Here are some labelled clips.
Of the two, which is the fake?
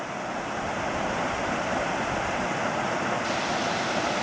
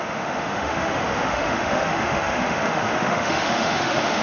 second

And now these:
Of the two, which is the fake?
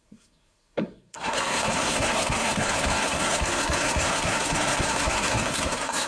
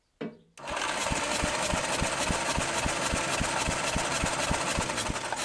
first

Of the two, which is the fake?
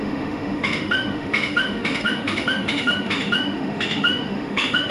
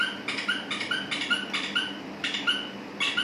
first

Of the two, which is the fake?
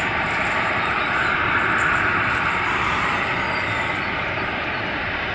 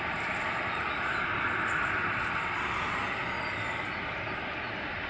first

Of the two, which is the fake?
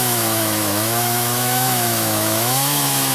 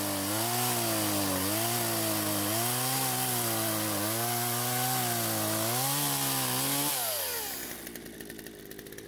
first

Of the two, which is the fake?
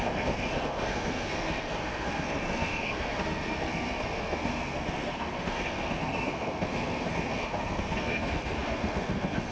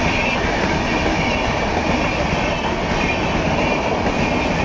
first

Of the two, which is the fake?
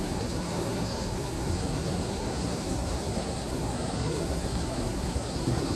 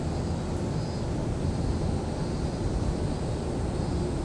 first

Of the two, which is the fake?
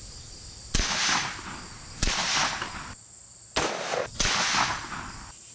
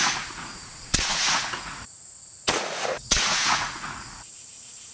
second